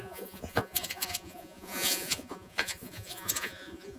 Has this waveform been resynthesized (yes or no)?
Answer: yes